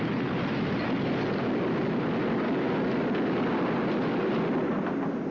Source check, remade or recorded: recorded